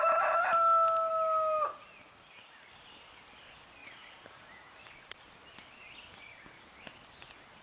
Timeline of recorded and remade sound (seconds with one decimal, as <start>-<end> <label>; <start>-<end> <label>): 0.0-1.7 recorded; 1.7-2.7 remade; 2.7-3.8 recorded; 3.8-4.9 remade; 4.9-7.6 recorded